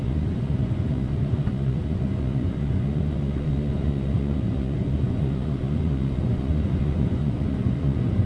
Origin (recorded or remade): remade